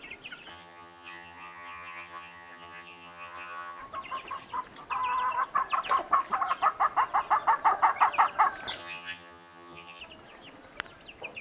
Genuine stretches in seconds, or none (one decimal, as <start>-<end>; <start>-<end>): 0.0-0.5; 3.8-8.8; 10.0-11.4